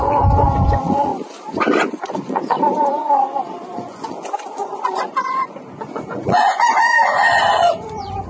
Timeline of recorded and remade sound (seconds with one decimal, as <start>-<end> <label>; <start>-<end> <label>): 0.0-1.1 remade; 1.1-1.8 recorded; 1.8-8.3 remade